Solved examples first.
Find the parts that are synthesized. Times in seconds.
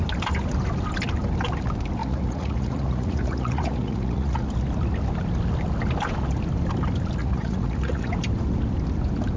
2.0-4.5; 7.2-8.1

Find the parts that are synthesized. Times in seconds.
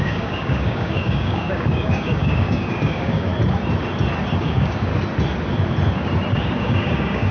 0.0-3.3; 4.4-4.9; 6.3-7.3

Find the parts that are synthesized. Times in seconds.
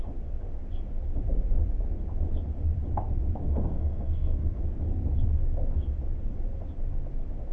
3.4-4.6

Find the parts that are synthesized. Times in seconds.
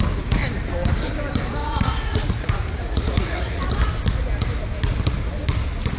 1.6-3.6